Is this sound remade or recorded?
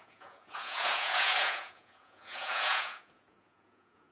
remade